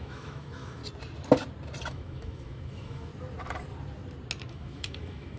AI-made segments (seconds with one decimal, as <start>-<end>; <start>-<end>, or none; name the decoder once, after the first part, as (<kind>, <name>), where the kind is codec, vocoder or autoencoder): 0.0-0.8 (autoencoder, DAC-VAE); 1.9-3.1; 4.5-5.4